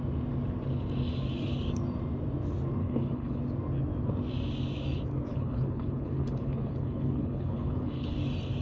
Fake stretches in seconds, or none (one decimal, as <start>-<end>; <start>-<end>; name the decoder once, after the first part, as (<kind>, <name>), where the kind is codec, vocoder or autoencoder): 2.8-3.4 (codec, HILCodec); 5.3-8.1